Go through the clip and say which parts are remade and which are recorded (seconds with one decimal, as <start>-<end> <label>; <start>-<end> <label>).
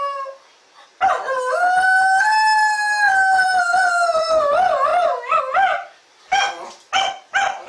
0.0-7.7 recorded